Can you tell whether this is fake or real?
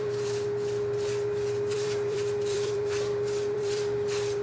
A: fake